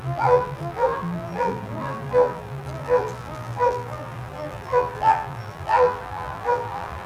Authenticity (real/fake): fake